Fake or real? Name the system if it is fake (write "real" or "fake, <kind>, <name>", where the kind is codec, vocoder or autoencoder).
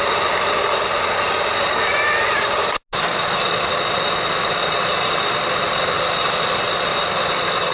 real